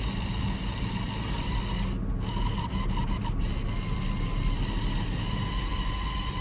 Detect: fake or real real